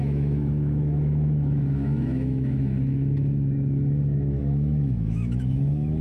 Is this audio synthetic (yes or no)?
yes